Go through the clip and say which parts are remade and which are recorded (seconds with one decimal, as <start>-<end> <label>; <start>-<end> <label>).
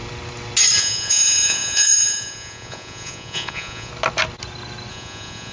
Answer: 0.0-0.8 recorded; 0.8-3.9 remade; 3.9-4.9 recorded; 4.9-5.5 remade